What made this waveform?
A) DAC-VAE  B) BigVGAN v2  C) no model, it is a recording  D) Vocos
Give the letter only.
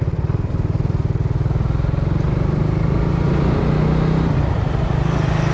C